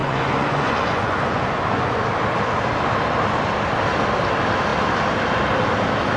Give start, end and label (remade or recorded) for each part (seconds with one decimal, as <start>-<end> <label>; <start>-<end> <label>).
0.0-2.0 remade; 2.0-6.2 recorded